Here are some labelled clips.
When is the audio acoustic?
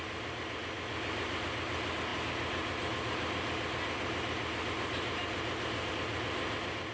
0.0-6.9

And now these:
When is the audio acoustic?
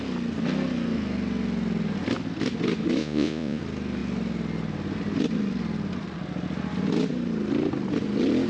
0.0-3.0; 3.6-8.5